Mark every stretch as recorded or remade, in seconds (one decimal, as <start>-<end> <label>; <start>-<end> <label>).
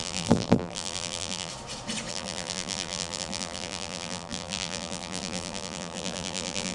0.0-1.5 remade; 1.5-2.1 recorded; 2.1-6.7 remade